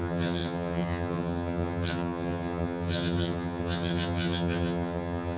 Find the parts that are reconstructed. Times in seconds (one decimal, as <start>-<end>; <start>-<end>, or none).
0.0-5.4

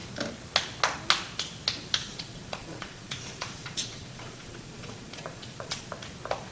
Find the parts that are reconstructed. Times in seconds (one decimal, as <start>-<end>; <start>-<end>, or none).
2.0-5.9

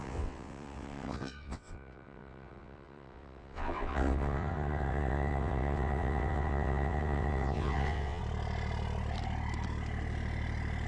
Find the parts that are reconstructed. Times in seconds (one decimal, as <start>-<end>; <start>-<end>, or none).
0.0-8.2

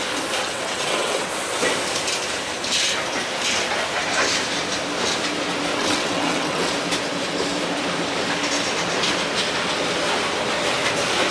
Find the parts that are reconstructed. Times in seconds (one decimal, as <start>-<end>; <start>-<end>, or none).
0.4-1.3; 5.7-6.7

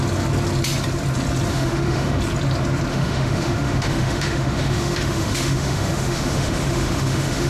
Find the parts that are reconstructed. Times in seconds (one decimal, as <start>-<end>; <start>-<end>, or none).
1.5-2.2; 2.9-7.5

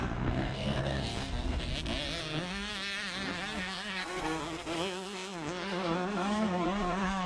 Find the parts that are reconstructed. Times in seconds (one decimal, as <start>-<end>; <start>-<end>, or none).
0.0-1.7; 2.2-2.7; 3.6-7.3